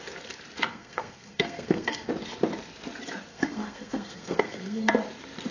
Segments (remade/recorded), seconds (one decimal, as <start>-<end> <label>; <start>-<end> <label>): 0.0-0.7 recorded; 0.7-2.1 remade; 2.1-3.3 recorded; 3.3-4.9 remade; 4.9-5.5 recorded